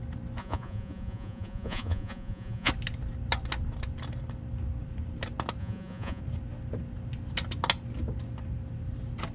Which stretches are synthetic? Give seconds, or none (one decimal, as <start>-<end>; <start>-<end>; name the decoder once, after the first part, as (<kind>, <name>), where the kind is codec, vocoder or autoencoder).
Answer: 0.4-2.7 (vocoder, Vocos); 5.6-6.2